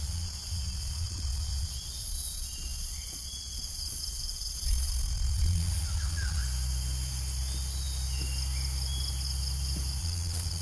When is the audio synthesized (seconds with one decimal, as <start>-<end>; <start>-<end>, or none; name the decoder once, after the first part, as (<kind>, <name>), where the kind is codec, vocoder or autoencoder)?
0.0-6.4 (vocoder, Vocos); 10.0-10.6